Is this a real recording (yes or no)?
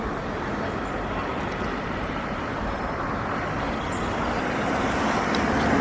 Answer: no